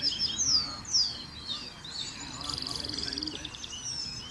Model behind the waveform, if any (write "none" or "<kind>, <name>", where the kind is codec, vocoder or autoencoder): none